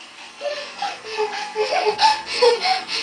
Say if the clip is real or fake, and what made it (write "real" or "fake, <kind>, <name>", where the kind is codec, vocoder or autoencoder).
fake, codec, SNAC